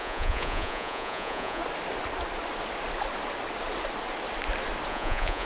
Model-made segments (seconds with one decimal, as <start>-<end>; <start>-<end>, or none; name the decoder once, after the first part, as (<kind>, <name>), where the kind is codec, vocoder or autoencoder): 0.0-1.6 (vocoder, Vocos); 4.9-5.5